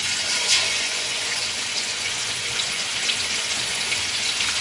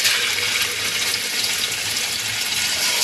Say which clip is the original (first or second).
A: second